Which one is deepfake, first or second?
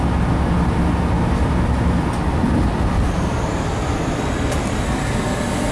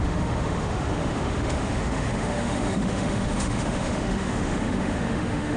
second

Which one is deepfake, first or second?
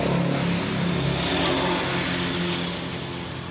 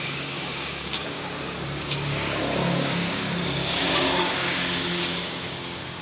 second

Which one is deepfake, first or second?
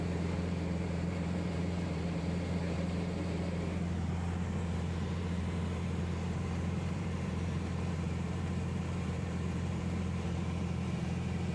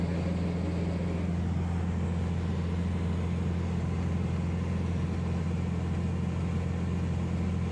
first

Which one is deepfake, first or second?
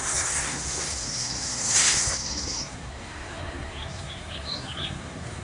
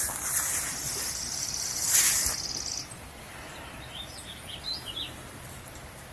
first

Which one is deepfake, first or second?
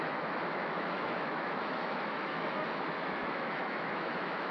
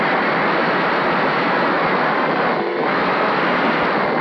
first